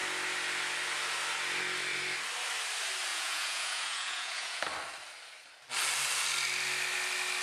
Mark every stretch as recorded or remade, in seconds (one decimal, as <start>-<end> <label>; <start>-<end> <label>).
0.0-3.1 recorded; 3.1-4.6 remade; 4.6-7.4 recorded